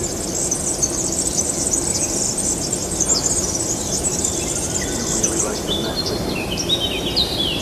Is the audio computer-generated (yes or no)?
no